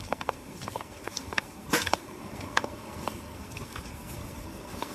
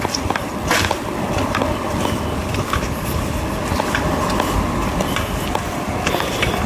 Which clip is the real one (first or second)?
second